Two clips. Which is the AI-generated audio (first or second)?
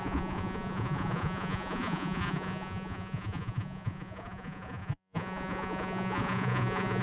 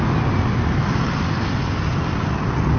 first